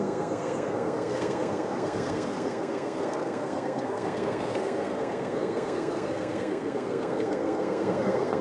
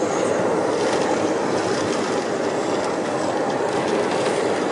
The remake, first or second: first